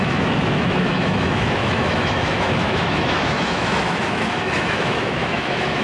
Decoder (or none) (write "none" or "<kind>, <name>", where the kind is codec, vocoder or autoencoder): autoencoder, DAC-VAE